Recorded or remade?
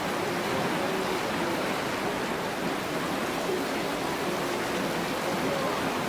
recorded